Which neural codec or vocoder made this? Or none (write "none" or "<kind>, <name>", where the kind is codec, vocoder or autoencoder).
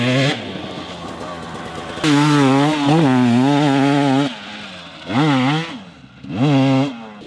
none